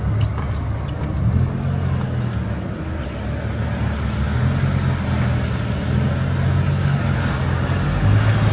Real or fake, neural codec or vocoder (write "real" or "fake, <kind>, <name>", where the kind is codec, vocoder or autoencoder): real